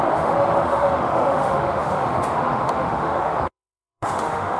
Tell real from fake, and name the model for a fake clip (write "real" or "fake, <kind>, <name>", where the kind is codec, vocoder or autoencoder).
fake, autoencoder, DAC-VAE